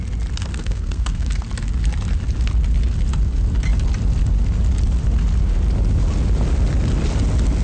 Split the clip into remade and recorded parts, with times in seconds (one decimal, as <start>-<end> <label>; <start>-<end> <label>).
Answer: 0.0-0.5 recorded; 0.5-1.4 remade; 1.4-7.6 recorded